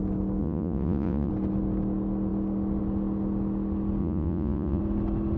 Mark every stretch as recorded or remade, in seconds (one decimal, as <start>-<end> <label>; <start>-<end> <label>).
0.0-0.4 recorded; 0.4-1.3 remade; 1.3-4.0 recorded; 4.0-4.8 remade; 4.8-5.4 recorded